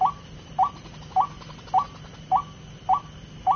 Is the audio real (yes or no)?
yes